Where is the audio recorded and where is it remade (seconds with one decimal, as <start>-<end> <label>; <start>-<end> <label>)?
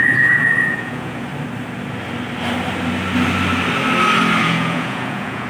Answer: 0.0-1.3 remade; 1.3-4.4 recorded; 4.4-5.5 remade